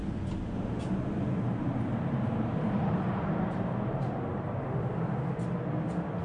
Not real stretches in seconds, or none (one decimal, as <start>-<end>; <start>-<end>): 0.0-0.8; 1.3-4.9